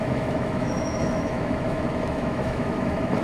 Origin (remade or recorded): remade